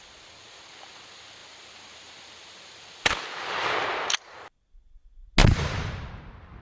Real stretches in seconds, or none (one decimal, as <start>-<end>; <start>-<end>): 0.0-5.4; 6.1-6.6